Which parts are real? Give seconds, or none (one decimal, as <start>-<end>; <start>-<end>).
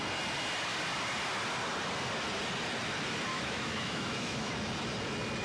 0.0-3.3; 4.5-5.4